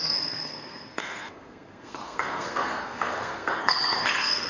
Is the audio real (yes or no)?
no